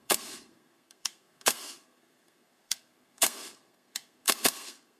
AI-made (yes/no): yes